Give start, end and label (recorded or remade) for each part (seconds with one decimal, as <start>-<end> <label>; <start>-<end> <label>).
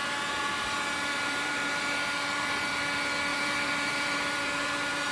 0.0-2.8 remade; 2.8-3.3 recorded; 3.3-5.1 remade